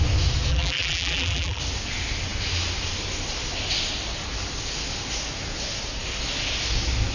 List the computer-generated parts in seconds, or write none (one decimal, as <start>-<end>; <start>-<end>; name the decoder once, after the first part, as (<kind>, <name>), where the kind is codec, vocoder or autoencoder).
0.5-1.6 (vocoder, BigVGAN v2)